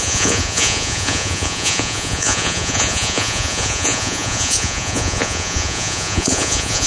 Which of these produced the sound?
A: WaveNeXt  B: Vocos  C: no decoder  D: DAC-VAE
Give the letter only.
B